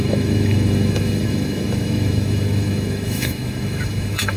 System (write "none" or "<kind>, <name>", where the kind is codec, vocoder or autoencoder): autoencoder, DAC-VAE